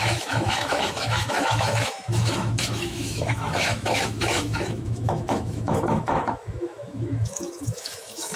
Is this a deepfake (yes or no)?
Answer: yes